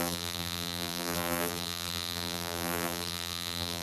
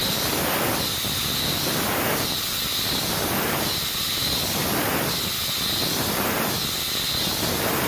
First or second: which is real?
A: second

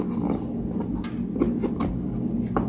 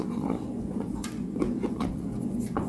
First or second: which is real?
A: first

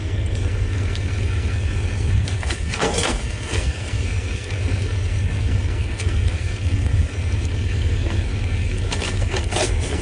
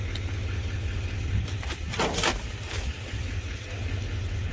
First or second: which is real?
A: second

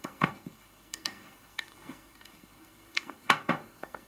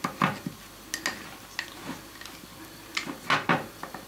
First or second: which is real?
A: second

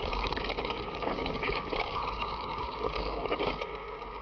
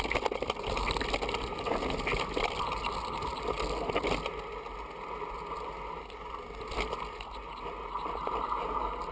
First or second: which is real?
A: second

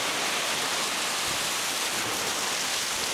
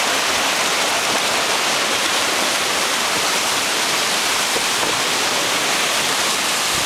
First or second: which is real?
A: first